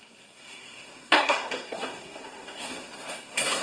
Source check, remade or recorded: remade